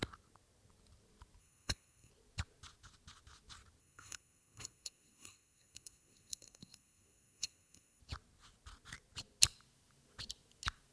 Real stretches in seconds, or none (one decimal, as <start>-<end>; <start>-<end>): 0.0-1.4; 2.1-3.8; 8.0-10.9